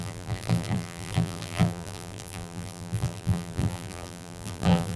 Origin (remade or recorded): remade